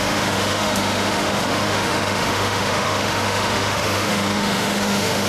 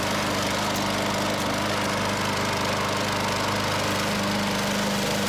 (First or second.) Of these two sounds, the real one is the second